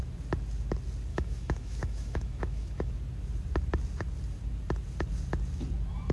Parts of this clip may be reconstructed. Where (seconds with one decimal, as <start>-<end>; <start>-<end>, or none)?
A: 1.1-2.9